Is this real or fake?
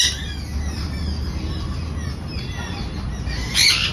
real